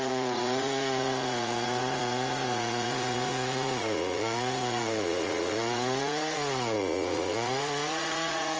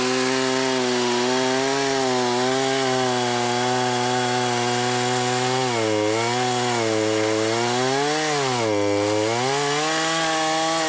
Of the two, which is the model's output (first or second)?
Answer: first